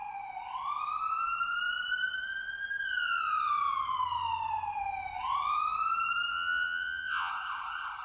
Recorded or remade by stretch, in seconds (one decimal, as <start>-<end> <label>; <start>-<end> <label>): 0.0-6.3 recorded; 6.3-7.3 remade; 7.3-8.0 recorded

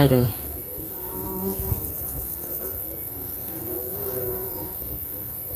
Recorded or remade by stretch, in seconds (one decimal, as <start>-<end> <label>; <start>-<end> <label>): 0.0-5.6 remade

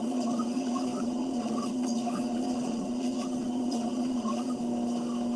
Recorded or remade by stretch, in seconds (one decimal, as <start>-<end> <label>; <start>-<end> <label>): 0.0-4.6 remade; 4.6-5.4 recorded

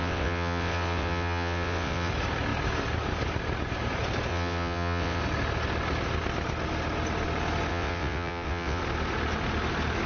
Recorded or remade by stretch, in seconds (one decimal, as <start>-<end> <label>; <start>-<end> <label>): 0.0-2.1 remade; 2.1-4.3 recorded; 4.3-5.2 remade; 5.2-7.7 recorded; 7.7-8.8 remade; 8.8-10.1 recorded

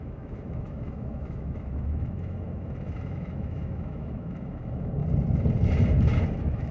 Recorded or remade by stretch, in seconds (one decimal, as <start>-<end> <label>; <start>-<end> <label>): 0.0-5.0 remade; 5.0-6.3 recorded; 6.3-6.7 remade